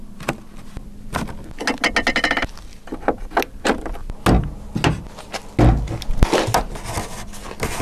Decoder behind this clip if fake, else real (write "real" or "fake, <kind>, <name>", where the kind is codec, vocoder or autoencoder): real